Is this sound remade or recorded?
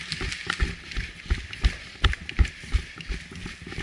recorded